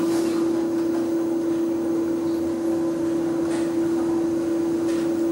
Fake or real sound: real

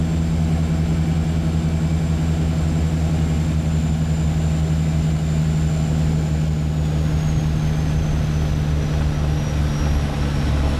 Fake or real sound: real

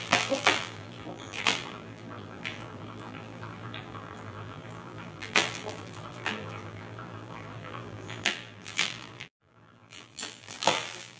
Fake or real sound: fake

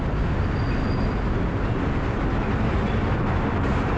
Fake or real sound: real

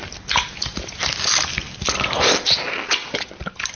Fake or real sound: real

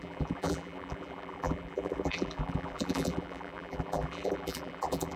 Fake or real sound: fake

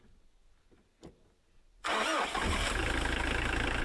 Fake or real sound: real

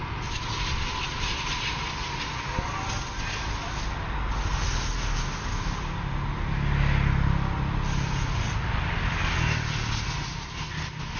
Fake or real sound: real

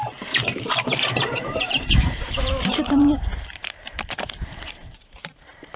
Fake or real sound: fake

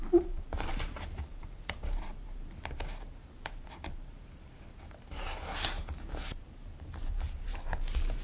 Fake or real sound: fake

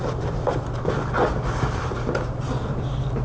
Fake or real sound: real